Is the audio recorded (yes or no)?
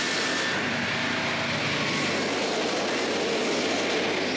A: yes